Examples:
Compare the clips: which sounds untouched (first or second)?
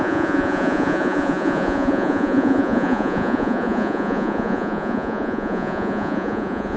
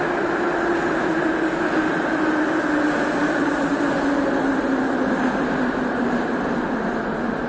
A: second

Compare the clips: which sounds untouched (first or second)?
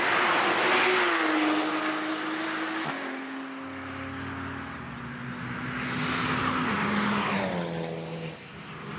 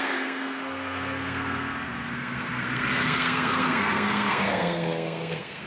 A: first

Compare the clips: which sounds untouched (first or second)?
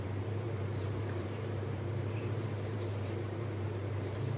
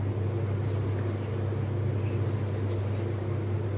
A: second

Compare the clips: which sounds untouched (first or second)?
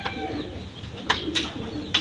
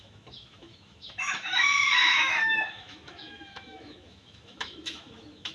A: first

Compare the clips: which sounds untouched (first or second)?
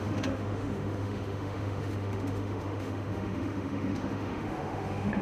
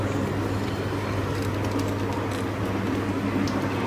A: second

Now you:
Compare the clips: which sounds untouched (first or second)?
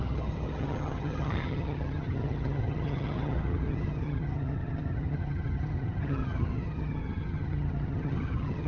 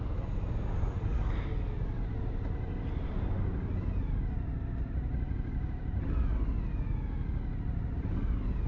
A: second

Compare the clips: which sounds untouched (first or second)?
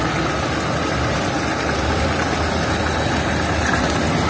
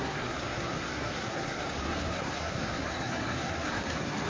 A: first